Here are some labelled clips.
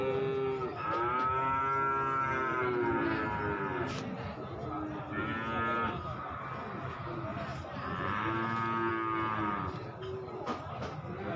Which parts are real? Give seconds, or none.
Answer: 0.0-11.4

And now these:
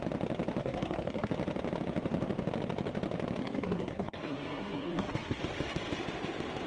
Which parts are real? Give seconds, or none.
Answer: 0.0-0.6; 1.3-3.4; 5.4-6.7

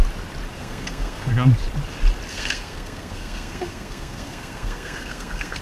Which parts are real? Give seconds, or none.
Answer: 0.0-0.6; 1.3-2.3

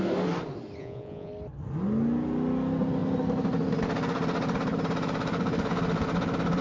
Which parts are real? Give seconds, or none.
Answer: 0.0-0.8; 1.3-6.6

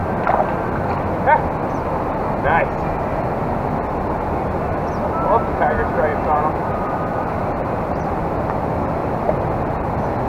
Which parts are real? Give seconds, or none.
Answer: 0.0-6.1; 8.2-9.0; 9.9-10.3

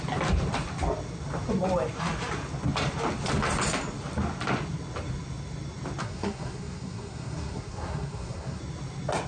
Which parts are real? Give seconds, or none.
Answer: 0.0-6.0; 8.6-9.3

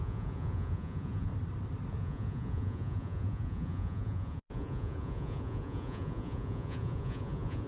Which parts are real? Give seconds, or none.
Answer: 1.3-1.9

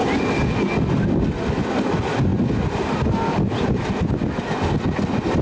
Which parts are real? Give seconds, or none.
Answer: 0.0-5.4